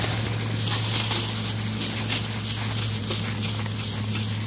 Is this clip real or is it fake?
real